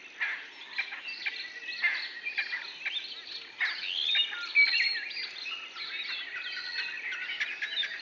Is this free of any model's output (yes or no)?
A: yes